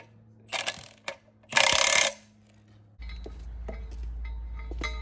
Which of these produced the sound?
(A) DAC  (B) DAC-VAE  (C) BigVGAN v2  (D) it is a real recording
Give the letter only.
D